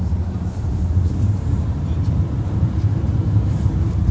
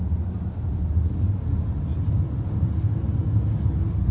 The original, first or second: second